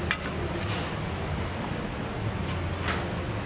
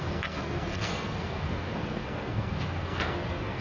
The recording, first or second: first